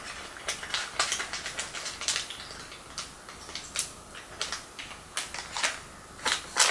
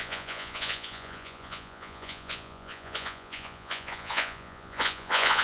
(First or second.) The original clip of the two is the first